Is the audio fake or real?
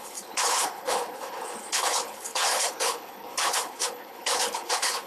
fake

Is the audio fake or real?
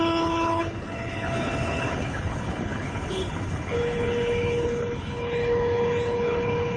fake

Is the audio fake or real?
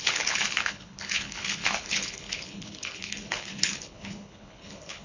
fake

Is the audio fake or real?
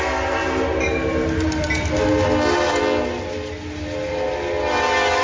real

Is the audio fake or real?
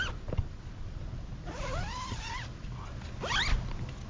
real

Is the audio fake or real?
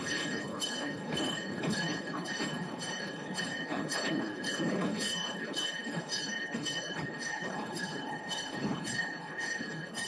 fake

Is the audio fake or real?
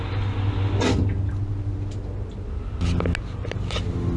real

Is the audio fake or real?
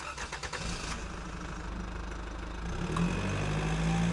real